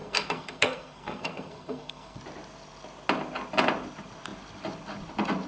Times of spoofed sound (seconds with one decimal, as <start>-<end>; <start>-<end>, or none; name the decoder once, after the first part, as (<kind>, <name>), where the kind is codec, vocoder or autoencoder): 0.0-2.2 (codec, SNAC)